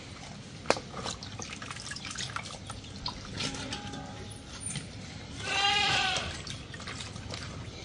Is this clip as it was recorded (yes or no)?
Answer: no